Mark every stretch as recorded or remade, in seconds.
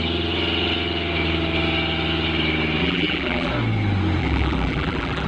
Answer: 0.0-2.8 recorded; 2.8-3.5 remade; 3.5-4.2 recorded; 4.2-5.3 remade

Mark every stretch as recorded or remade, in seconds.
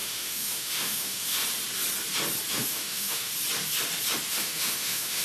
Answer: 0.0-1.4 remade; 1.4-2.5 recorded; 2.5-3.3 remade; 3.3-4.3 recorded; 4.3-5.2 remade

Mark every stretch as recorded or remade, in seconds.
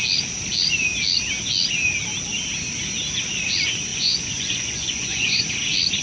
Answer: 0.0-3.9 recorded; 3.9-5.4 remade; 5.4-6.0 recorded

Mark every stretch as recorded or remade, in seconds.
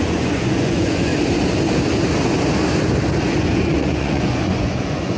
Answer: 0.0-1.1 remade; 1.1-3.2 recorded; 3.2-5.2 remade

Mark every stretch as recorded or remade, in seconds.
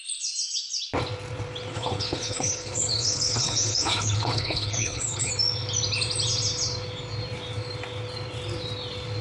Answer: 0.0-1.7 recorded; 1.7-5.3 remade; 5.3-9.2 recorded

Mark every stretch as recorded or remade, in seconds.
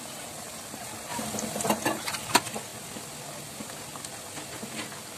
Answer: 0.0-5.2 recorded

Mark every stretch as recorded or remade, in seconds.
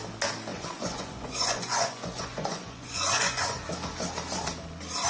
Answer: 0.0-0.5 recorded; 0.5-3.6 remade; 3.6-5.1 recorded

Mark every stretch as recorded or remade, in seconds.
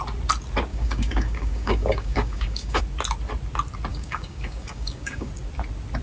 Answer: 0.0-0.7 recorded; 0.7-2.8 remade; 2.8-3.9 recorded; 3.9-5.3 remade; 5.3-6.0 recorded